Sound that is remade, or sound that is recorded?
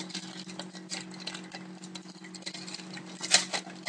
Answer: recorded